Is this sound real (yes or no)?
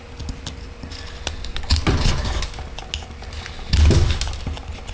yes